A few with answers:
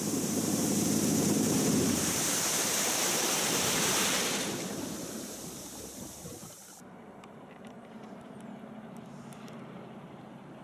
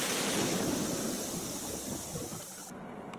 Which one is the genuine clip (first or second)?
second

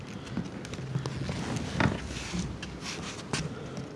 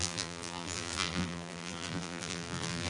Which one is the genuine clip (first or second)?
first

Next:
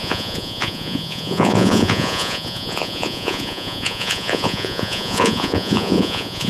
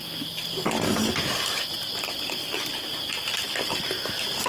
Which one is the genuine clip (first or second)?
second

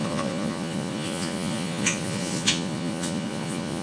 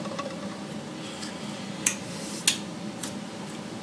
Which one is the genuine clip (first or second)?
second